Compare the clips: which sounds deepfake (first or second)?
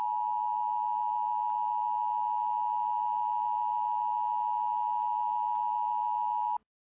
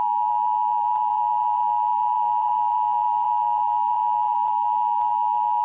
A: second